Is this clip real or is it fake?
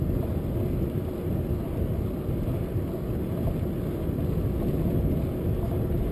real